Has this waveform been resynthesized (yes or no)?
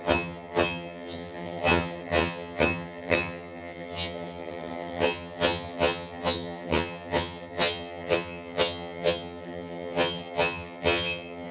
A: yes